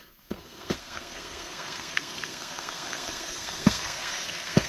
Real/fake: fake